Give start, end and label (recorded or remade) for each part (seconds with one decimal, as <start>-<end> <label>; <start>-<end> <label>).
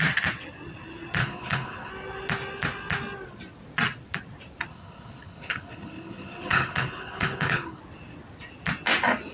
0.0-1.2 recorded; 1.2-1.9 remade; 1.9-4.7 recorded; 4.7-7.8 remade; 7.8-9.3 recorded